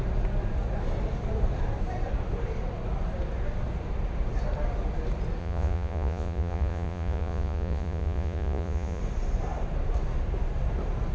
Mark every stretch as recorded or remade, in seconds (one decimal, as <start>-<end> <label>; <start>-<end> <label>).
0.0-5.4 recorded; 5.4-9.0 remade; 9.0-11.1 recorded